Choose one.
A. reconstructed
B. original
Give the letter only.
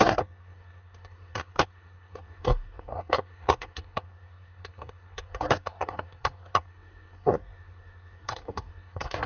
A